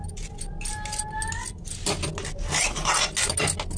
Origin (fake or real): real